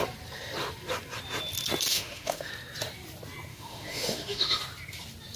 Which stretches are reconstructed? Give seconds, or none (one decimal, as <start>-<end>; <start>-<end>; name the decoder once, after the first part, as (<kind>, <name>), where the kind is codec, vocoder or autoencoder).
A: 1.9-2.5 (autoencoder, DAC-VAE); 3.5-4.6